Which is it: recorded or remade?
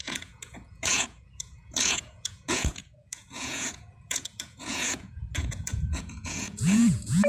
remade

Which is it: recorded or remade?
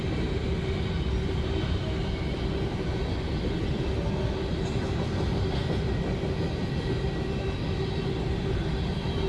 recorded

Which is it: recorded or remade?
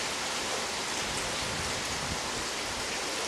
recorded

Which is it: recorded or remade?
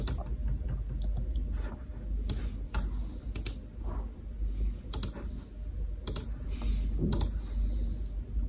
recorded